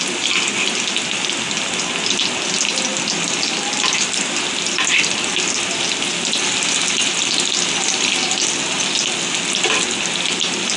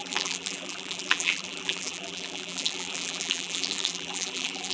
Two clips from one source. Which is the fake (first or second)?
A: second